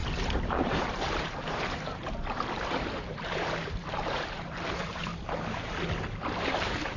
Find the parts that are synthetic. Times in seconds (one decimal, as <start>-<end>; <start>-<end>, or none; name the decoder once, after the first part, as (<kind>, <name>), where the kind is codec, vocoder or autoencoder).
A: 0.0-5.1 (vocoder, BigVGAN v2); 6.4-7.0